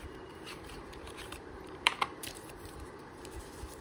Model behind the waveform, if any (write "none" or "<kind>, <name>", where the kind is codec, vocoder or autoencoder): vocoder, BigVGAN v2